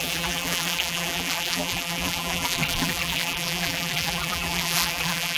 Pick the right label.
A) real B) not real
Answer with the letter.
B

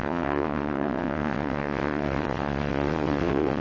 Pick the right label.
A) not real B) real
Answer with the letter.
A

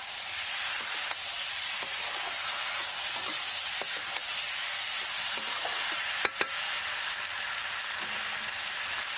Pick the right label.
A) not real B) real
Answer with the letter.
B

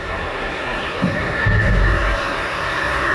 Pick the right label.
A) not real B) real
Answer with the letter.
A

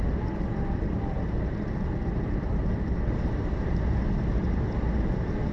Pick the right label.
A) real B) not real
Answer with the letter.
A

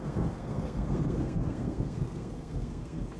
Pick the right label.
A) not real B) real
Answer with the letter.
A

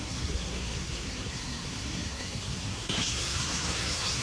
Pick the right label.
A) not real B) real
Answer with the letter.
A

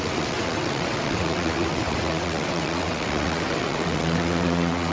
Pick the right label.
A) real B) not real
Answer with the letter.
B